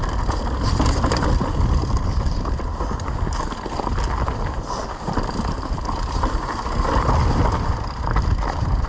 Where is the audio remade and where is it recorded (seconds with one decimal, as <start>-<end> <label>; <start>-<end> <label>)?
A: 0.0-8.9 recorded